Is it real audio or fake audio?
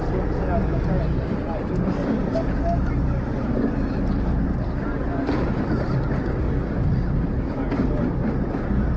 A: real